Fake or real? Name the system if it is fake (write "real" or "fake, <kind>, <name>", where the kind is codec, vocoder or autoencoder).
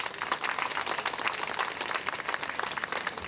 real